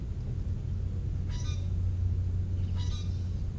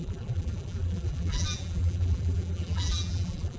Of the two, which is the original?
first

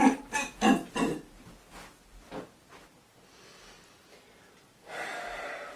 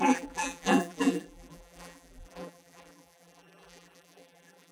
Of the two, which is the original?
first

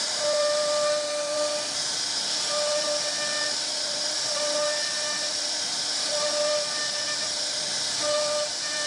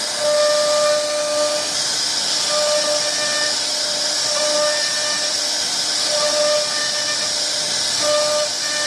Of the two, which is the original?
second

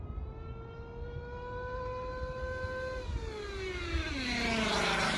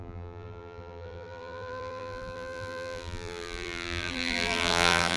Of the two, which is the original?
first